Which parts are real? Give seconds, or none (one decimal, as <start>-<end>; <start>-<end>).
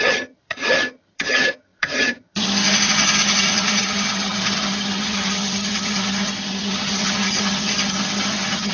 none